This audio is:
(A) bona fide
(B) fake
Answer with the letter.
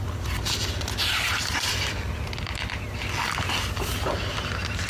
A